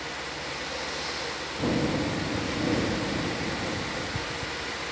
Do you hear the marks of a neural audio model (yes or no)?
no